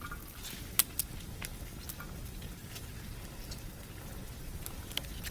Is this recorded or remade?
recorded